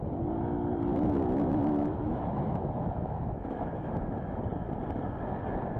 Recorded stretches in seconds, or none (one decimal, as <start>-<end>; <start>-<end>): 0.0-0.9; 4.4-5.8